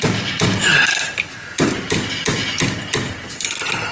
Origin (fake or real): real